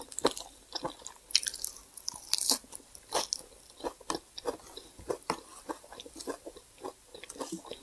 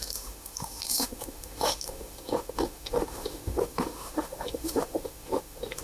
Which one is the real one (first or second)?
first